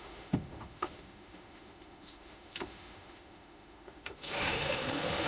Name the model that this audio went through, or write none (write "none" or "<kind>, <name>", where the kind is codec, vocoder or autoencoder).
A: autoencoder, DAC-VAE